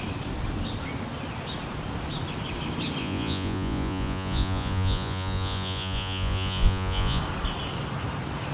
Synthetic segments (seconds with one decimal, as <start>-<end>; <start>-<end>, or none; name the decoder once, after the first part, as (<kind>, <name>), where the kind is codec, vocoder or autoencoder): 3.0-7.2 (vocoder, Vocos)